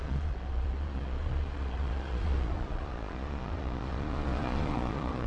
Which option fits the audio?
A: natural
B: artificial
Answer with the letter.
B